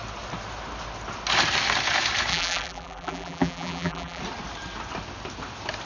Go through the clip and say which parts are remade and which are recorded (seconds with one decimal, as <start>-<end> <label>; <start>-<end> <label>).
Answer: 0.0-2.3 recorded; 2.3-4.2 remade; 4.2-5.9 recorded